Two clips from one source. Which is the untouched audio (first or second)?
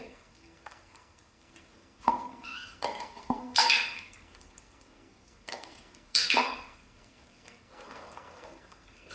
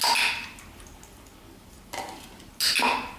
second